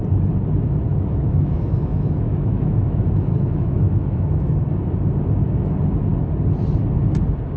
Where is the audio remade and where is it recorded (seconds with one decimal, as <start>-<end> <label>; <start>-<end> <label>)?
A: 0.0-0.9 recorded; 0.9-4.5 remade; 4.5-7.6 recorded